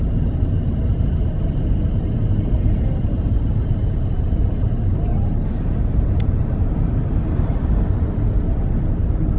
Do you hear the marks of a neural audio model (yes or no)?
yes